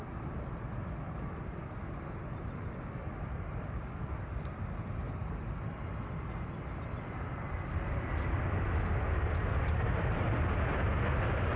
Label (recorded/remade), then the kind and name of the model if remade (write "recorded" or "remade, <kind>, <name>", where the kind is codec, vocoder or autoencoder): recorded